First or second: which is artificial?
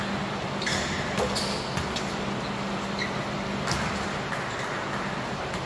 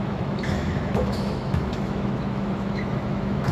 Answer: second